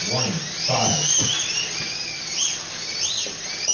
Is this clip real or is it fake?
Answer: real